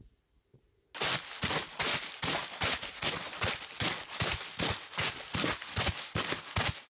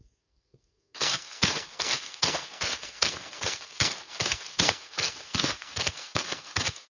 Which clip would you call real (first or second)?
first